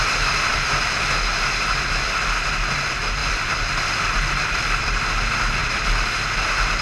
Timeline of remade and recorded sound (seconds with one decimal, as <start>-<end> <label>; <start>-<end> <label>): 0.0-0.5 recorded; 0.5-2.2 remade; 2.2-3.2 recorded; 3.2-5.1 remade; 5.1-5.6 recorded; 5.6-6.8 remade